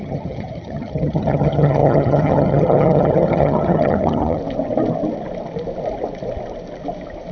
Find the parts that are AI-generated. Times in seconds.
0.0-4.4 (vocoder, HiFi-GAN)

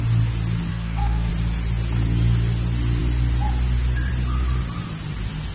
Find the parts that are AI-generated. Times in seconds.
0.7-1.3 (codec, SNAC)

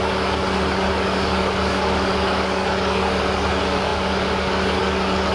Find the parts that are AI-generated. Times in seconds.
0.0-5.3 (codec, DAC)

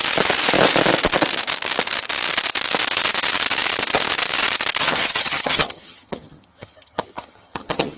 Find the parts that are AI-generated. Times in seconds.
4.8-8.0 (vocoder, HiFi-GAN)

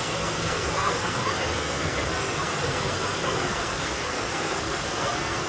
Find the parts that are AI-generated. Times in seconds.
0.0-5.5 (codec, SNAC)

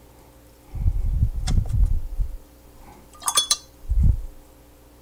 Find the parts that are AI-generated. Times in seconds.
1.2-4.2 (vocoder, BigVGAN v2)

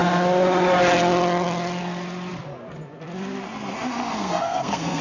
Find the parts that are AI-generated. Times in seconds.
4.1-5.0 (codec, SNAC)